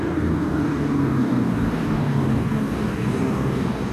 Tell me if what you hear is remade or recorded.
remade